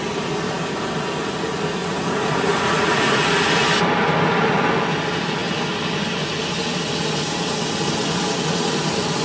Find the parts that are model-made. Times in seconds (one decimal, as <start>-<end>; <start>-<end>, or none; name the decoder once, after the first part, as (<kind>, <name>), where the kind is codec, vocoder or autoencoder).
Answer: 1.8-3.5 (vocoder, Vocos)